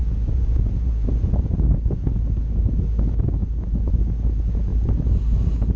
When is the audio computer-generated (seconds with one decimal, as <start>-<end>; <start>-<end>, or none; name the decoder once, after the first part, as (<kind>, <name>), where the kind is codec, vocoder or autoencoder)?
0.0-1.7 (vocoder, Vocos)